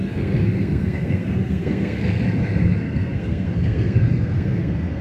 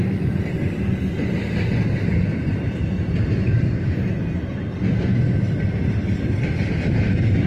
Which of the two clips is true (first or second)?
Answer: second